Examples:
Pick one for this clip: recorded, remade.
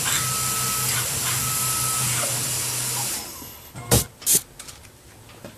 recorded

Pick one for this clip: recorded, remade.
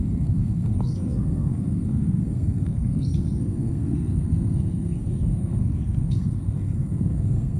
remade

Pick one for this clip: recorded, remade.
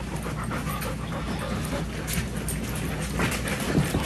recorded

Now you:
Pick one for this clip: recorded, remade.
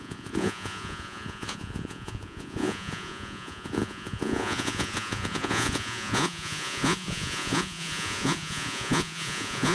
remade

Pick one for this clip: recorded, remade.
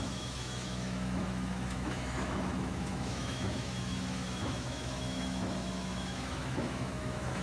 remade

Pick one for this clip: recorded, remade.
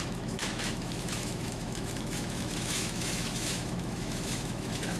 remade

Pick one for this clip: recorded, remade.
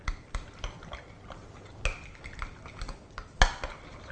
recorded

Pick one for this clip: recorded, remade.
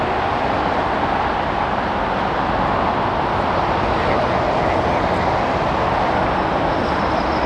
recorded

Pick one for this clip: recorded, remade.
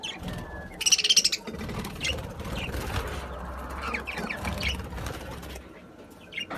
recorded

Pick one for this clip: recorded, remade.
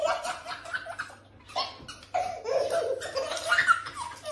recorded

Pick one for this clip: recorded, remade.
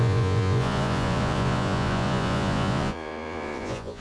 remade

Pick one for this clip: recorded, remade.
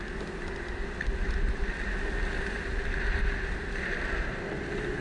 recorded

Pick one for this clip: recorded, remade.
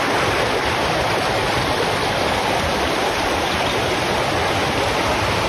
remade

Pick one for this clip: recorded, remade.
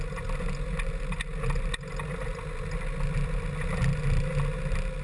recorded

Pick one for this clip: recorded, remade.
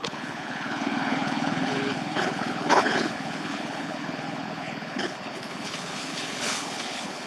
remade